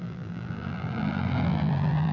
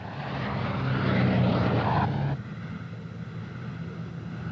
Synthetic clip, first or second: first